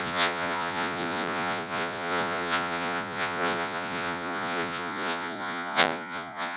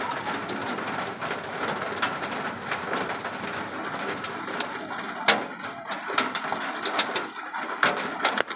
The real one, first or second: second